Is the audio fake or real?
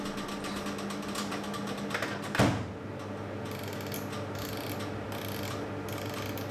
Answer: real